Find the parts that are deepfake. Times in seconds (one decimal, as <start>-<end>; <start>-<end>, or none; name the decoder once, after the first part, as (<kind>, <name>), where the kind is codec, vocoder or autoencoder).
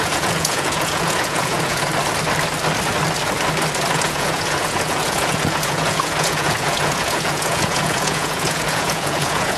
0.0-1.9 (vocoder, Vocos); 3.9-9.6